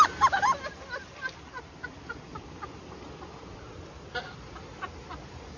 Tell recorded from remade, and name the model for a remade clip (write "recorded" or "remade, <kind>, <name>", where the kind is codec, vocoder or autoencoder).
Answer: recorded